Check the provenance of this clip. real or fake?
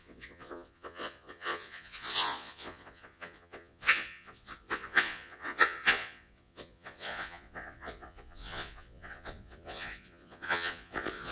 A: fake